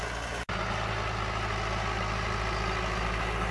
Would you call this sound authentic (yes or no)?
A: yes